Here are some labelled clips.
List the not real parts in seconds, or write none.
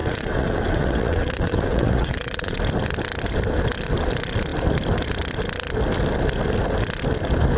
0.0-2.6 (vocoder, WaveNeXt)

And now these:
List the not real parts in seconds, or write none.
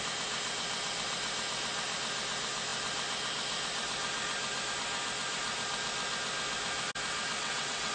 7.4-7.9 (vocoder, WaveNeXt)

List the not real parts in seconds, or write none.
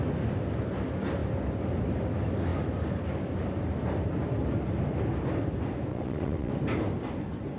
5.9-6.5 (vocoder, WaveNeXt)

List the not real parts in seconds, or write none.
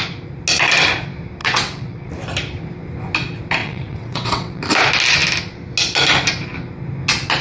1.4-2.1 (vocoder, WaveNeXt); 3.6-4.6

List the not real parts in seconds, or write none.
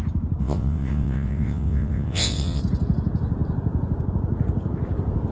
0.4-2.6 (vocoder, WaveNeXt)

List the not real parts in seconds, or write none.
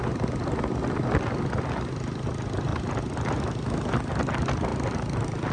none